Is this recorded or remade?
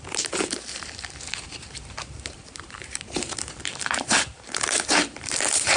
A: remade